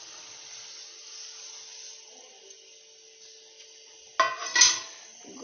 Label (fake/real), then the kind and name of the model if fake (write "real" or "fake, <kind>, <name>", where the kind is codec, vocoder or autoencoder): real